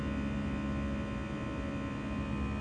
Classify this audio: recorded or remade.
recorded